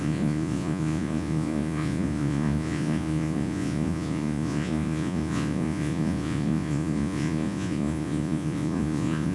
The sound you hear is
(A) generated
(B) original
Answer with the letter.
A